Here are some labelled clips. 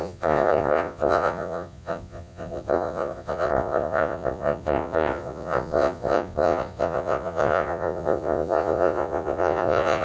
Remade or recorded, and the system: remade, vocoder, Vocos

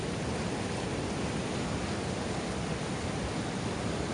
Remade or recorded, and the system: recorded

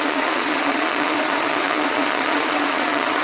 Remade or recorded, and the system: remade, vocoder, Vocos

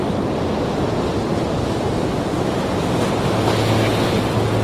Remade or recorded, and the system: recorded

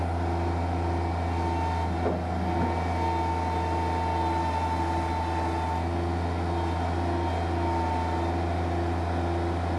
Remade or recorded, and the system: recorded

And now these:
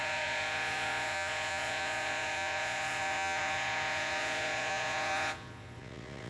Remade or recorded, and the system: remade, vocoder, Vocos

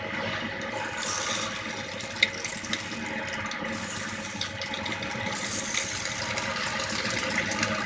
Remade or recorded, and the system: recorded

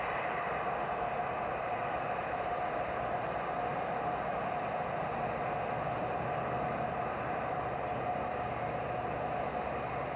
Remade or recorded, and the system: recorded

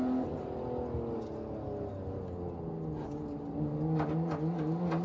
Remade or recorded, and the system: recorded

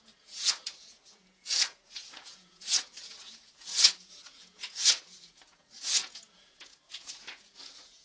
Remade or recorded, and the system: remade, vocoder, Vocos